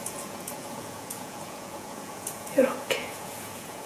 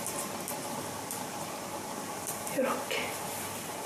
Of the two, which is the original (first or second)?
second